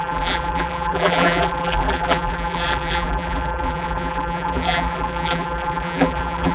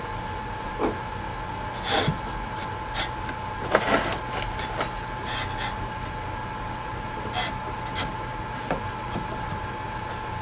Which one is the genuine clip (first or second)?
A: second